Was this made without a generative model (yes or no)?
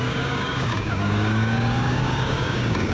no